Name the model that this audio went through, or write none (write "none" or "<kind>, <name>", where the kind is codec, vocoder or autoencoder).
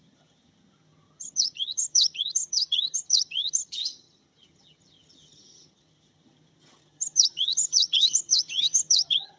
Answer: vocoder, HiFi-GAN